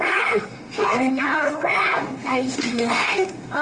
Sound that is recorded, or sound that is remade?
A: remade